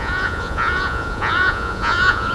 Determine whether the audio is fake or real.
fake